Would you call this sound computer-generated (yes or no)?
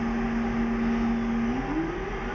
no